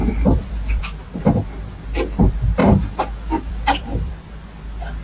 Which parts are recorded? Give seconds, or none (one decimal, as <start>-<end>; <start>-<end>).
0.8-2.6; 4.1-5.0